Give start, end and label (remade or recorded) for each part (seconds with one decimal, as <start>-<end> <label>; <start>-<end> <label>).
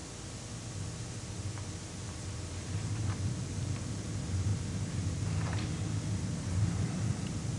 0.0-2.1 recorded; 2.1-4.5 remade; 4.5-6.4 recorded; 6.4-7.6 remade